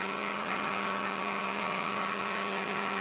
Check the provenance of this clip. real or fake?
fake